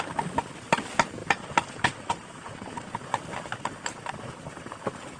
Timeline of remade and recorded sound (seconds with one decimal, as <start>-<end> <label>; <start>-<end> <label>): 0.0-5.2 recorded